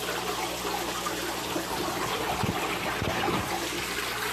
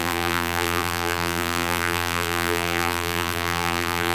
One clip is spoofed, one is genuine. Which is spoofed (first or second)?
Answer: second